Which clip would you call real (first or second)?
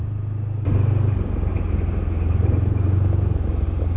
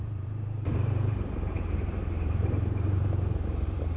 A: first